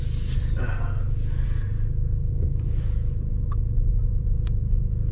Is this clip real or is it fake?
real